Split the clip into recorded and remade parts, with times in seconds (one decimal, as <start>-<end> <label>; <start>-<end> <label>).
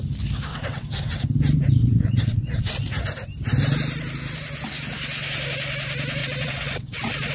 0.0-0.5 recorded; 0.5-1.2 remade; 1.2-1.8 recorded; 1.8-2.7 remade; 2.7-6.2 recorded; 6.2-7.3 remade